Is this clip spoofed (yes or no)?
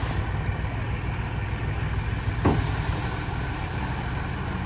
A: no